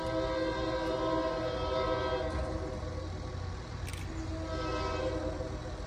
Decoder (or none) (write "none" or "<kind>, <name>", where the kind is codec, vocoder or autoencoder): none